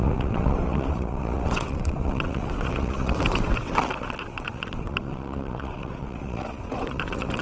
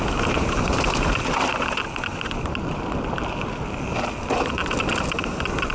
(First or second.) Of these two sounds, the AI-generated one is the first